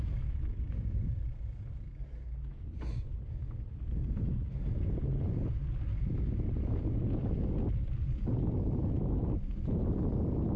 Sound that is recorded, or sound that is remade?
recorded